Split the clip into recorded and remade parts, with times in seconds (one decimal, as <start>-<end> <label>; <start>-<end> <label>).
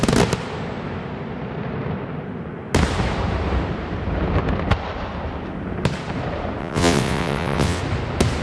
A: 0.0-6.6 recorded; 6.6-7.8 remade; 7.8-8.4 recorded